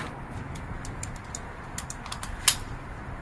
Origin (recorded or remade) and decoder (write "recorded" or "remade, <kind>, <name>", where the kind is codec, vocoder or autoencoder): recorded